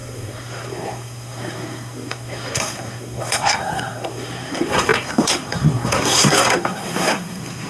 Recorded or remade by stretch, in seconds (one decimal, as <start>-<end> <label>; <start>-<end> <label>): 0.0-7.7 remade